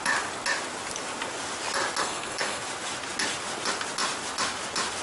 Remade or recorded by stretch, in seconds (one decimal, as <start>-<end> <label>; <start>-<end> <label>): 0.0-2.0 recorded; 2.0-2.6 remade; 2.6-5.0 recorded